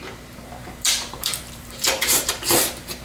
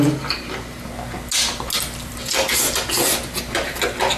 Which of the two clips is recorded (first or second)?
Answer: second